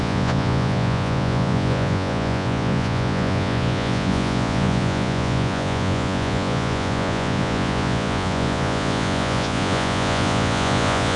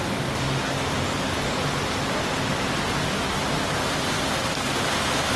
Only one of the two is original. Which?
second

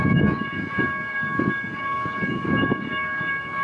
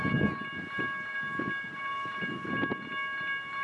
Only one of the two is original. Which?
second